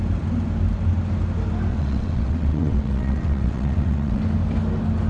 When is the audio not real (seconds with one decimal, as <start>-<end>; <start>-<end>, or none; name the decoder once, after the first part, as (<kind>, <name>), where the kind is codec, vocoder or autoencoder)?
1.7-4.2 (vocoder, WaveNeXt)